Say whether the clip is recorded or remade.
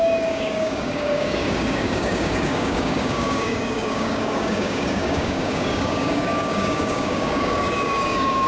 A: remade